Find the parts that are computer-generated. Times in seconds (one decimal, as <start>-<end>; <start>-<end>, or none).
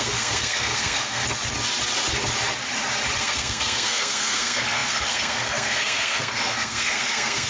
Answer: 0.0-1.2; 3.2-7.5